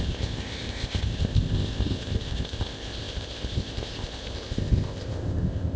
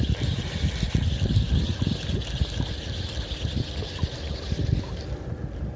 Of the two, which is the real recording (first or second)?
second